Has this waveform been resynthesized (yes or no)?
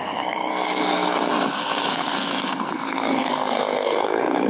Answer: yes